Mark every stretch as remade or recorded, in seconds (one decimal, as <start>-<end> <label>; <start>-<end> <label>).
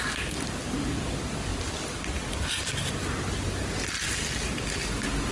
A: 0.0-5.3 recorded